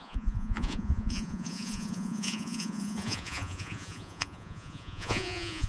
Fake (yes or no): yes